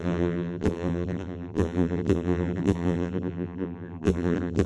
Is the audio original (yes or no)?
no